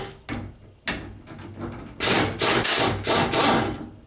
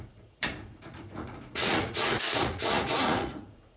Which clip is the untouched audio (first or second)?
first